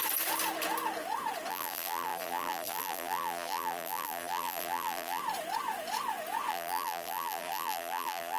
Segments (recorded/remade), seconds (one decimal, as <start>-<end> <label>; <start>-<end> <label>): 0.0-1.5 recorded; 1.5-5.2 remade; 5.2-6.5 recorded; 6.5-8.4 remade